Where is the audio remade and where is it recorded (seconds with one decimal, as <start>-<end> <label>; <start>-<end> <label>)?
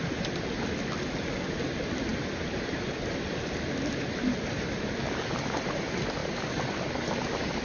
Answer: 0.0-7.6 recorded